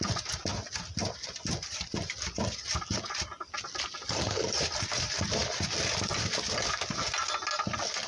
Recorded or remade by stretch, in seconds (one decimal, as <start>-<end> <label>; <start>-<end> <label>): 0.0-8.1 recorded